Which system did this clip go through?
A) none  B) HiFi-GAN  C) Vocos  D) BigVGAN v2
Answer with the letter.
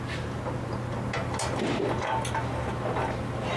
A